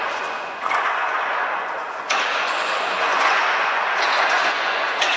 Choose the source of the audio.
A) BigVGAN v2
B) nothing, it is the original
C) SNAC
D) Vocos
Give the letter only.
D